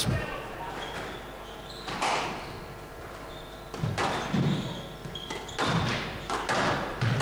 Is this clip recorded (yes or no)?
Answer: no